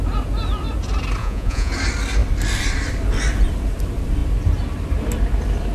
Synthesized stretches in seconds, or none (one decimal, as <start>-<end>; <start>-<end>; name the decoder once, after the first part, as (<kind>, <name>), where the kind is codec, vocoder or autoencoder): 1.2-1.7 (vocoder, Vocos)